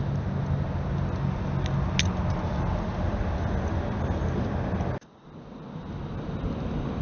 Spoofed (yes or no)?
no